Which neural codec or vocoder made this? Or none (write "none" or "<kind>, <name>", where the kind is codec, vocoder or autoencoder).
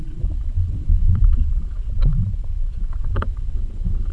vocoder, Vocos